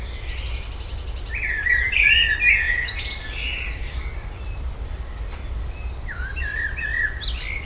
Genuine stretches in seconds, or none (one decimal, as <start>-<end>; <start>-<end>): 0.0-7.7